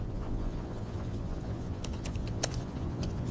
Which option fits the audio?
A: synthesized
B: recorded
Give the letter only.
A